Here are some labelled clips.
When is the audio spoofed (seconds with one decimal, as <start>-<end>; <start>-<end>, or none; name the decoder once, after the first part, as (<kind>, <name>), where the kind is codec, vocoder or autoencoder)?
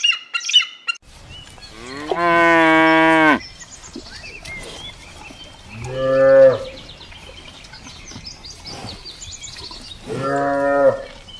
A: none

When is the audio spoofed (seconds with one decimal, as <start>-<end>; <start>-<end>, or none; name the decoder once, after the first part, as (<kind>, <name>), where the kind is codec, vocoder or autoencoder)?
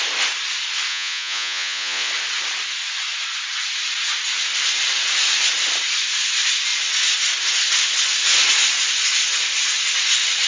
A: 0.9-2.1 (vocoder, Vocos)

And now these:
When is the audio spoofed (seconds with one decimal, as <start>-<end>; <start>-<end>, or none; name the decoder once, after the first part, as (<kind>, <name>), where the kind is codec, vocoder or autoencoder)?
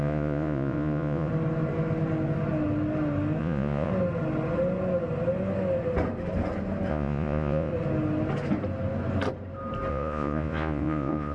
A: 0.0-1.3 (vocoder, Vocos); 3.4-3.9; 6.9-7.7; 9.9-11.3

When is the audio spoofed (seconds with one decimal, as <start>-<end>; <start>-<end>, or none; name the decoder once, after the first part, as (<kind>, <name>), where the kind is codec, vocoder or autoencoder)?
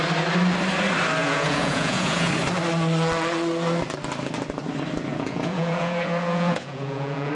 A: 1.2-2.3 (vocoder, Vocos); 5.1-7.3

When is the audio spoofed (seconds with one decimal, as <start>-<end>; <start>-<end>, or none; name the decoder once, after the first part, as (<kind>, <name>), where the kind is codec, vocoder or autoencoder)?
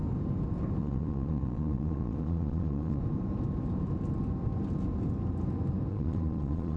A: 0.8-3.0 (vocoder, Vocos); 5.9-6.8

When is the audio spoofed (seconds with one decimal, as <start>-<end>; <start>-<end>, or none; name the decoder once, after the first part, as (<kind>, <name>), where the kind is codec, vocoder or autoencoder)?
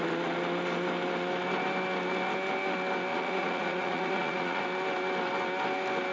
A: 3.1-4.6 (vocoder, Vocos)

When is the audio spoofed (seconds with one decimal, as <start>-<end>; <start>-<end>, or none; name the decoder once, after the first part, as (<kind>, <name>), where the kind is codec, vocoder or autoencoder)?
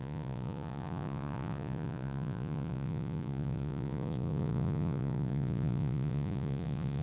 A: 0.0-7.0 (vocoder, Vocos)